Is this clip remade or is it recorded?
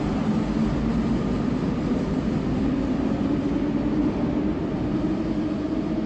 recorded